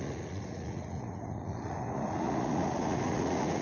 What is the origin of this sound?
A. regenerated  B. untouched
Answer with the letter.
A